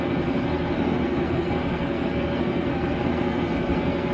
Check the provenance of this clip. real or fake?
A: fake